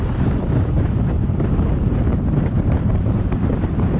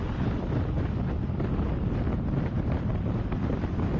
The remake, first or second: first